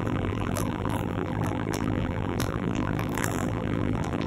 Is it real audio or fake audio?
fake